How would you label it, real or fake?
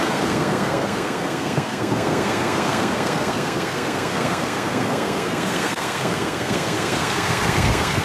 fake